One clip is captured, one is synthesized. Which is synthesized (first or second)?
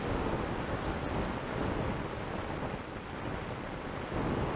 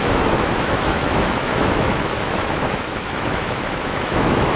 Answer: second